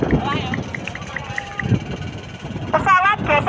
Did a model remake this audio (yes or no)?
no